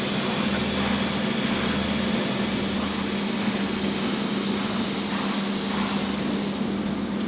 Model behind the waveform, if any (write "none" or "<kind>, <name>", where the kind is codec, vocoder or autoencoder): none